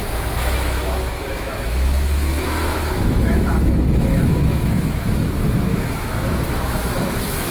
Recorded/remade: remade